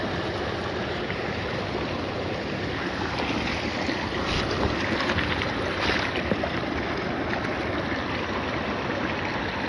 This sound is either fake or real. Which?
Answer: real